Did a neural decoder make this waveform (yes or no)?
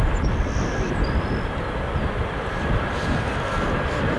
no